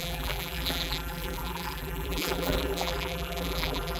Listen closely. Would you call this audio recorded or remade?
remade